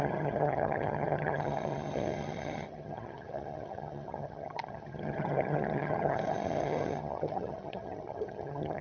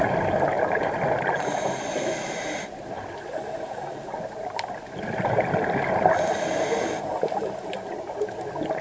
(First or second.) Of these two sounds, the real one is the second